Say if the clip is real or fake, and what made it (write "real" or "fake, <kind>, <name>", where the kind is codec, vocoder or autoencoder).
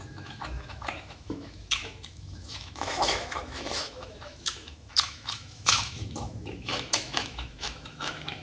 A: fake, autoencoder, DAC-VAE